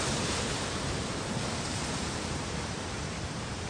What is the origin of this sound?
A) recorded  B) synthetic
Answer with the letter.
B